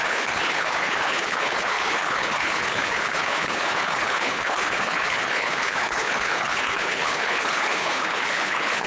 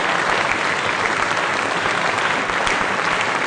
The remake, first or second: first